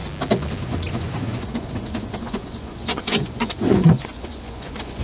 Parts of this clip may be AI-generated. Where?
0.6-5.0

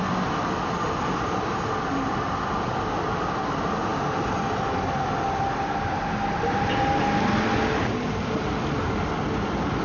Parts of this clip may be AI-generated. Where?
none

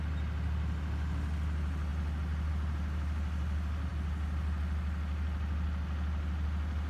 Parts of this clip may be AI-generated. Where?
none

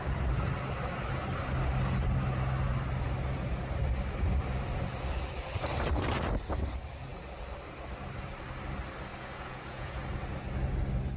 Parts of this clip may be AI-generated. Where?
9.1-10.0

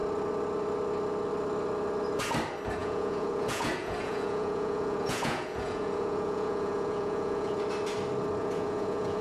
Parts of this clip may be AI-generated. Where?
2.8-7.6; 8.4-9.2

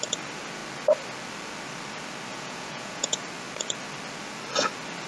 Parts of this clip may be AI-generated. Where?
2.3-3.2

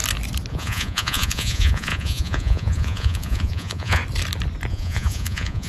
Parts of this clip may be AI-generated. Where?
0.5-4.0; 4.7-5.7

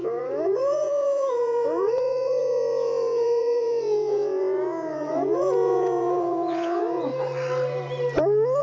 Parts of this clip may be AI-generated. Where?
0.0-7.1